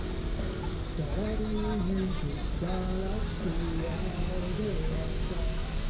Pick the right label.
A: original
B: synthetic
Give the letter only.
A